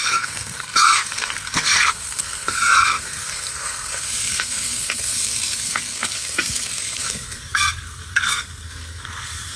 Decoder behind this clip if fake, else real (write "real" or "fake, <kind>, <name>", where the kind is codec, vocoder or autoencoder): fake, codec, SNAC